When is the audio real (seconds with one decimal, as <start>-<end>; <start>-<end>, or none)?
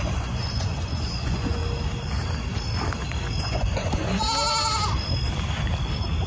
1.6-3.4; 4.2-6.3